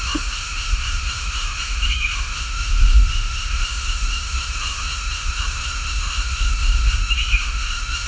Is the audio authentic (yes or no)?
no